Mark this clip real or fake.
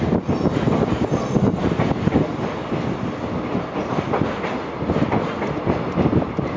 real